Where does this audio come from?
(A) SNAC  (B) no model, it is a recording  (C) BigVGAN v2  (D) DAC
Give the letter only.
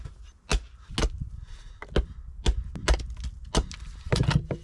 B